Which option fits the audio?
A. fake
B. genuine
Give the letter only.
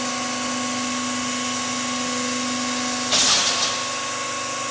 B